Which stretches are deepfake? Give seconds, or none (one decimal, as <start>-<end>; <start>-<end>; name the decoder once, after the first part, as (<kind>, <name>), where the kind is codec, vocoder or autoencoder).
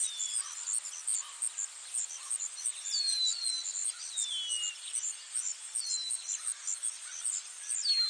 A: none